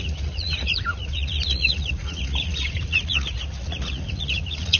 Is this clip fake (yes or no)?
yes